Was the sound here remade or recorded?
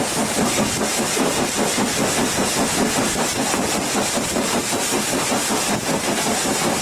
recorded